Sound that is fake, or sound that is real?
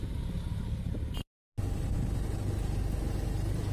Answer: real